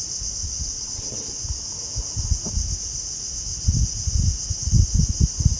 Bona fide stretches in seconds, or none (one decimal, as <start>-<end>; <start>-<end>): 0.0-0.4; 1.2-5.6